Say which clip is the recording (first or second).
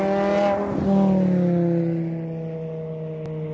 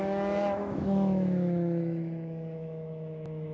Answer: first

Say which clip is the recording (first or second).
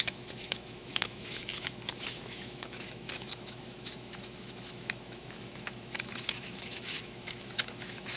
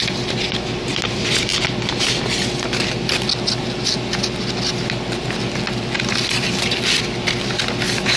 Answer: second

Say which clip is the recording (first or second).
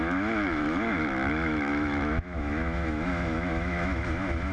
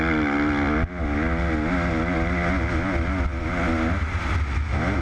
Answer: second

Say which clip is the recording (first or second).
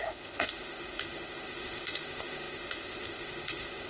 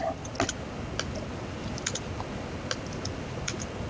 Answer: second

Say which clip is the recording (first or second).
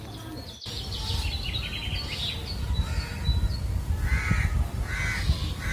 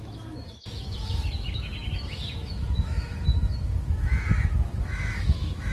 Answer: first